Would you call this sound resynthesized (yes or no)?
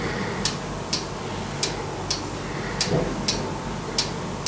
no